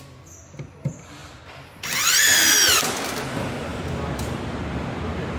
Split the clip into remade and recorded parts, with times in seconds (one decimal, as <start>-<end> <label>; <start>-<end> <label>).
0.0-3.7 recorded; 3.7-4.6 remade; 4.6-5.4 recorded